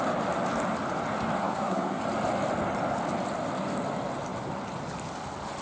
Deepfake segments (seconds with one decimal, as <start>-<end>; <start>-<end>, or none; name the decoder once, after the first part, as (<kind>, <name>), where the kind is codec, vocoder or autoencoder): 1.4-2.0 (codec, SNAC)